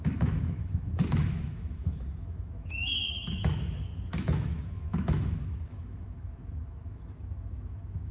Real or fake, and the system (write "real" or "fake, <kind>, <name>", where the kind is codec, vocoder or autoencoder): fake, autoencoder, DAC-VAE